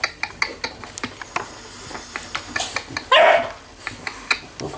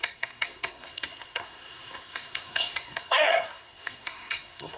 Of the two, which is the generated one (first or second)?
second